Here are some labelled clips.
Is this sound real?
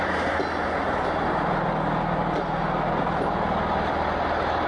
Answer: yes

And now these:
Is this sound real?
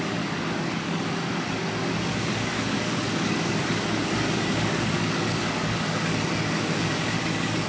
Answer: no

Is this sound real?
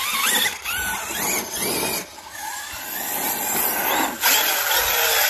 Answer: yes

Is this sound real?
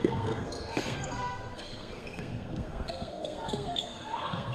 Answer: no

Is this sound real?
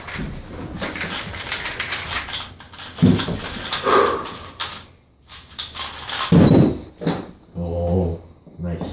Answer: yes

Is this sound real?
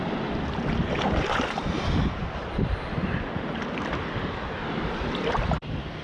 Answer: no